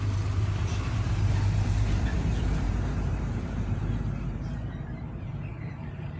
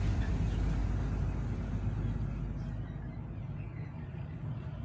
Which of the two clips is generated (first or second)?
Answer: first